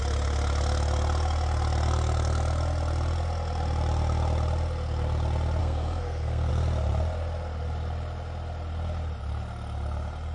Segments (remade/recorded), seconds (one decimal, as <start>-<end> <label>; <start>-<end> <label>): 0.0-5.6 recorded; 5.6-6.5 remade; 6.5-10.3 recorded

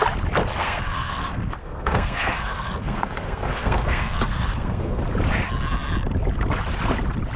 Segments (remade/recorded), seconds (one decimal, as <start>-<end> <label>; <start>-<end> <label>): 0.0-0.6 recorded; 0.6-5.0 remade; 5.0-7.4 recorded